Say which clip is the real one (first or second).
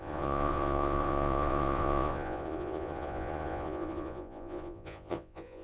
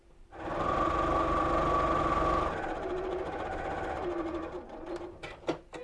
second